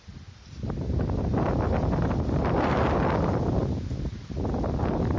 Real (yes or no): yes